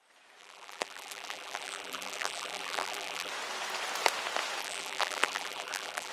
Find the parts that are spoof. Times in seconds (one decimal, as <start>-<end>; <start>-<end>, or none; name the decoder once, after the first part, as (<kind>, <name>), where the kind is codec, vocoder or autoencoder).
0.4-3.3 (vocoder, BigVGAN v2); 4.6-6.1